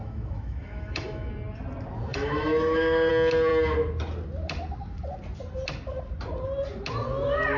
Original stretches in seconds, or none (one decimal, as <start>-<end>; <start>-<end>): 1.3-2.1; 3.1-7.6